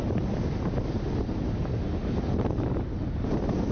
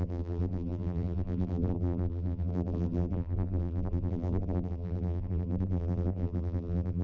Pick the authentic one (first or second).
first